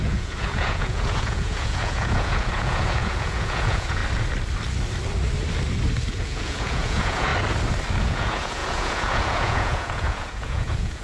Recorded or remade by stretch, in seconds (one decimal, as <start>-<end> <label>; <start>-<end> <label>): 0.0-4.0 remade; 4.0-6.1 recorded; 6.1-7.3 remade; 7.3-8.0 recorded; 8.0-11.0 remade